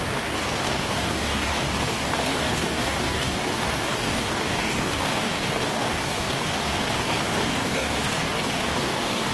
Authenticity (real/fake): fake